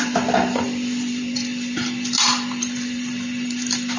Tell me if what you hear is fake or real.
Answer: fake